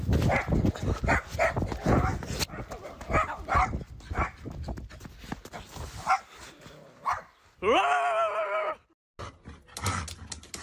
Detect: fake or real real